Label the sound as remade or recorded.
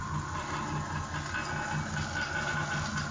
recorded